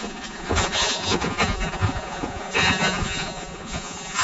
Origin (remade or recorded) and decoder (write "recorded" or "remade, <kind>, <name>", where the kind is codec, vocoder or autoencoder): remade, vocoder, Vocos